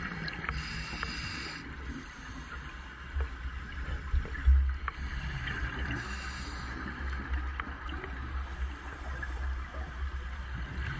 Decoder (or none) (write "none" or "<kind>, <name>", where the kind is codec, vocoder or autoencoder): none